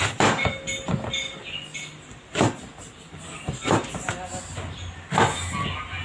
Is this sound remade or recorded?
recorded